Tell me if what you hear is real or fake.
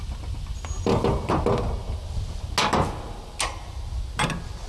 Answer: real